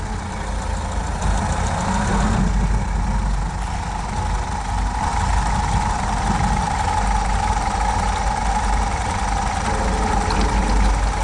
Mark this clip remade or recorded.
recorded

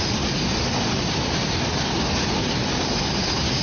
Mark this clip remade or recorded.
recorded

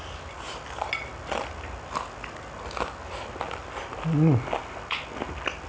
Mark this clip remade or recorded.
recorded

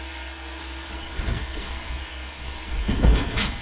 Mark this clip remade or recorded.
remade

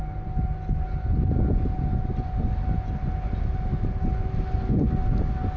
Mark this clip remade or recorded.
recorded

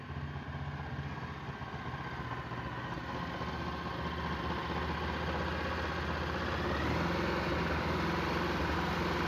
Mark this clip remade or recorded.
recorded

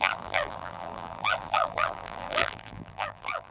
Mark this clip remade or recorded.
remade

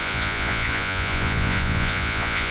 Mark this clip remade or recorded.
remade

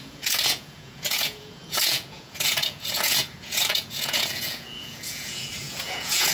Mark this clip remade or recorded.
remade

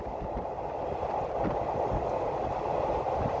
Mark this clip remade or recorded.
recorded